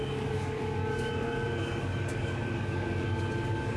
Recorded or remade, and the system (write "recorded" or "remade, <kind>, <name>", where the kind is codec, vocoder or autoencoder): remade, codec, DAC